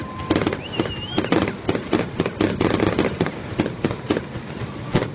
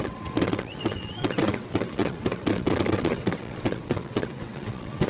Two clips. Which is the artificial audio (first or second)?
second